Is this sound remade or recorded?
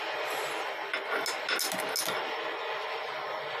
recorded